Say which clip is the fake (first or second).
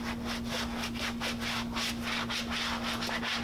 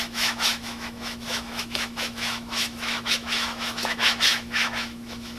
second